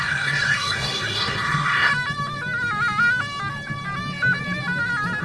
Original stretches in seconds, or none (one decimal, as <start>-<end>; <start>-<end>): 1.9-5.2